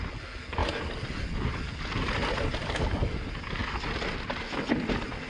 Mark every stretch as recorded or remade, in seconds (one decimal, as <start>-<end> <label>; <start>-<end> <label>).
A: 0.0-5.3 recorded